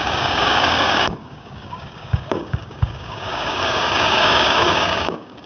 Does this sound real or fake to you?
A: fake